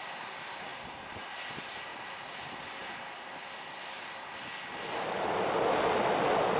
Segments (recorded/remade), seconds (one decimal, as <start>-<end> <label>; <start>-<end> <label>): 0.0-6.6 recorded